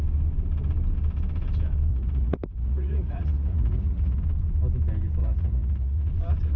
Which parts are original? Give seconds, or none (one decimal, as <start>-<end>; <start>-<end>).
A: 0.0-1.9; 4.2-5.2; 6.1-6.6